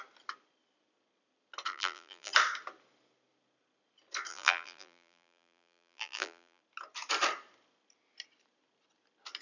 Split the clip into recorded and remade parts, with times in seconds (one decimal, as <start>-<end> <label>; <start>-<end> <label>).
0.0-1.7 recorded; 1.7-2.3 remade; 2.3-4.3 recorded; 4.3-6.6 remade; 6.6-9.4 recorded